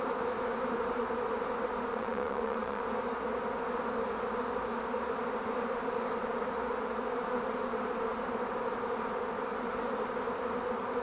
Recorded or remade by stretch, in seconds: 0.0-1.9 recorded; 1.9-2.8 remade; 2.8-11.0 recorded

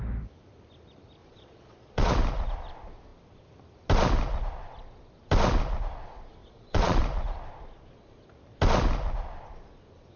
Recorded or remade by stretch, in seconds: 0.0-1.2 recorded; 1.2-2.1 remade; 2.1-6.4 recorded; 6.4-7.0 remade; 7.0-10.2 recorded

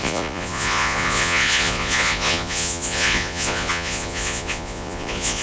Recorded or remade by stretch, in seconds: 0.0-5.4 remade

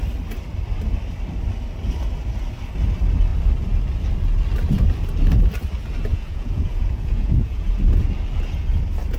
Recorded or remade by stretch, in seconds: 0.0-6.1 recorded; 6.1-7.7 remade; 7.7-9.2 recorded